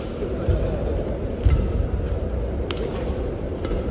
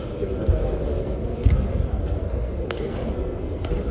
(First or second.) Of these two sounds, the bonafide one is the first